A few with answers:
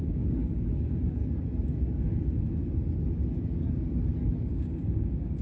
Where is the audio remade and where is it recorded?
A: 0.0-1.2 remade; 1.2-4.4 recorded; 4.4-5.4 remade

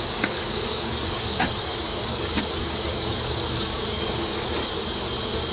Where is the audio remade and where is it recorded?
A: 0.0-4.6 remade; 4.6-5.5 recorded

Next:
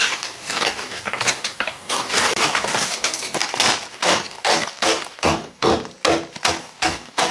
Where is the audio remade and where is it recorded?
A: 0.0-3.4 remade; 3.4-3.9 recorded; 3.9-5.7 remade; 5.7-6.6 recorded; 6.6-7.3 remade